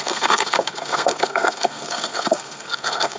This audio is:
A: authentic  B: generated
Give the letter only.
B